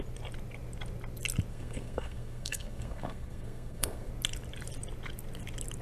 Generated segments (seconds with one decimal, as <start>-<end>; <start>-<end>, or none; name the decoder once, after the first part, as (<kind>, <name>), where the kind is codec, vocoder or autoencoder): 1.5-4.1 (codec, SNAC)